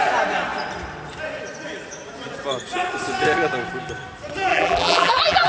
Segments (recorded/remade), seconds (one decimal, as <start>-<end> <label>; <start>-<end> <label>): 0.0-4.5 recorded; 4.5-5.5 remade